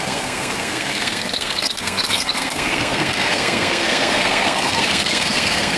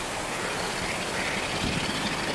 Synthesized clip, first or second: first